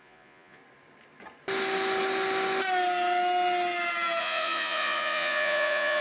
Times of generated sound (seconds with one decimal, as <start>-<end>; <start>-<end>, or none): 0.0-0.6; 4.2-6.0